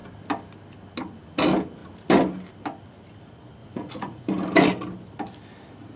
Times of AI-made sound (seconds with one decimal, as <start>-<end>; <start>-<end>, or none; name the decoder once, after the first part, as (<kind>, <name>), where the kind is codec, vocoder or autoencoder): 3.6-4.2 (vocoder, Vocos)